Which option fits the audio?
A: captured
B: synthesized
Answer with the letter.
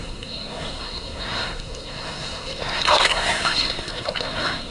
B